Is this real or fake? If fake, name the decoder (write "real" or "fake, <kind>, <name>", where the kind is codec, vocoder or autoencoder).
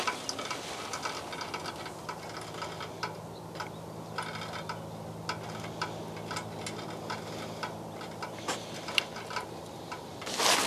real